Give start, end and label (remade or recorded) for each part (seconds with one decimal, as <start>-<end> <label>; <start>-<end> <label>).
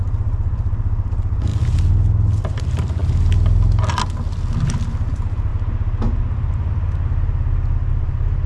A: 0.0-1.5 remade; 1.5-2.4 recorded; 2.4-3.0 remade; 3.0-5.1 recorded; 5.1-5.5 remade; 5.5-7.9 recorded; 7.9-8.5 remade